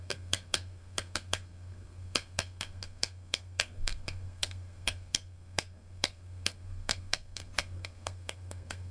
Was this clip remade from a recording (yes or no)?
yes